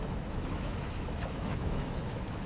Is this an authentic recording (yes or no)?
no